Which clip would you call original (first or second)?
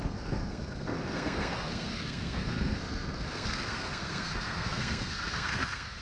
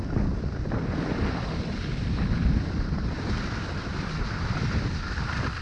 second